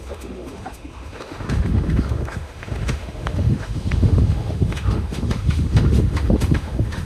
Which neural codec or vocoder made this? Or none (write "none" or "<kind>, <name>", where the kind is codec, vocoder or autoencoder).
autoencoder, DAC-VAE